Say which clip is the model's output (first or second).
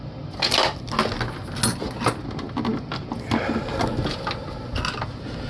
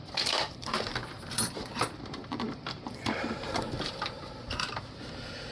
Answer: second